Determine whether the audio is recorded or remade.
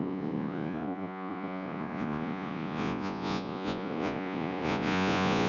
remade